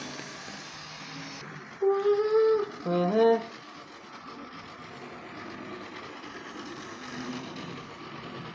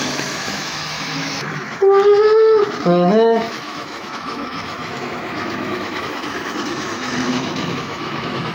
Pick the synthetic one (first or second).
second